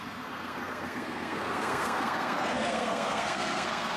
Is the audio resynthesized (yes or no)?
yes